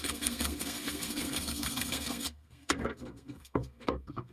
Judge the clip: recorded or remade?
remade